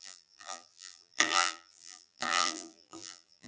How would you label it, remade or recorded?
remade